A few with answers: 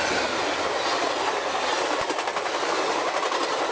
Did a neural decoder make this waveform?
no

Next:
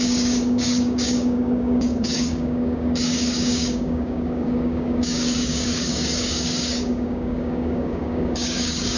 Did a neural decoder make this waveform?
yes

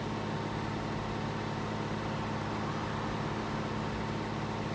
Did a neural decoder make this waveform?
no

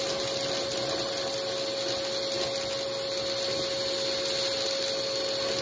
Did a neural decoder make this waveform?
no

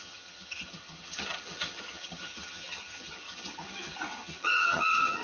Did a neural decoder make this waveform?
yes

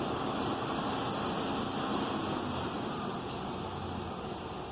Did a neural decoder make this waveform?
no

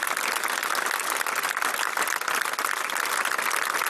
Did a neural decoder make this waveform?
no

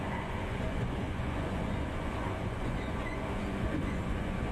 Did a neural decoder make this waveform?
yes